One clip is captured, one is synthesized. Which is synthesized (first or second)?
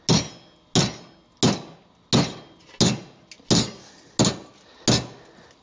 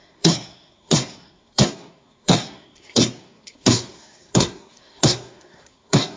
second